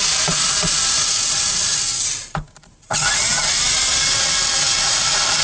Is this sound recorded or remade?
recorded